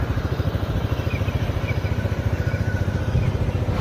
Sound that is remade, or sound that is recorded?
recorded